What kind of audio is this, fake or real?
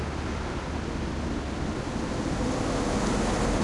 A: real